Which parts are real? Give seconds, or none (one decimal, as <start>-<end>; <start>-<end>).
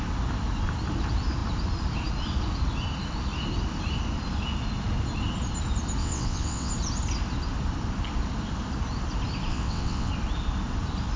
0.0-6.0; 6.7-9.5; 10.1-11.2